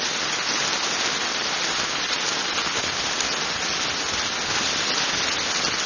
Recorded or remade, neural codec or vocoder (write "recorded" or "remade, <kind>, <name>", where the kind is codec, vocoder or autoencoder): recorded